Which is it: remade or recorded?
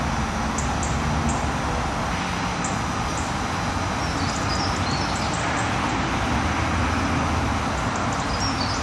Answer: recorded